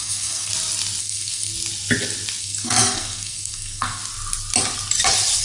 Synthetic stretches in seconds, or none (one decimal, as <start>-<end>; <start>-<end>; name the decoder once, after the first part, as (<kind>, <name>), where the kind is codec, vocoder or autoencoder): 0.0-0.5 (codec, SNAC); 1.0-1.5; 2.4-4.0